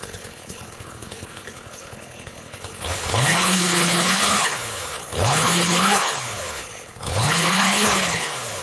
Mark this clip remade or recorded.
remade